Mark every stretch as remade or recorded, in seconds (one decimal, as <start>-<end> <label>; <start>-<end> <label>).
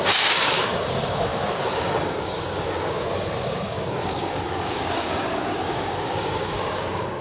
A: 0.0-7.2 remade